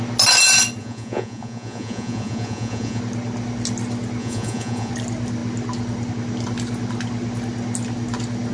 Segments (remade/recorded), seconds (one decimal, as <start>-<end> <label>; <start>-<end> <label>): 0.0-0.8 recorded; 0.8-3.0 remade; 3.0-4.2 recorded; 4.2-4.9 remade; 4.9-8.5 recorded